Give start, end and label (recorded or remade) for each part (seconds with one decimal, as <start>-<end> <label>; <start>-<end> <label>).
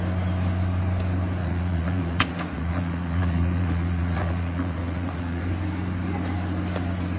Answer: 0.0-1.4 recorded; 1.4-5.4 remade; 5.4-7.2 recorded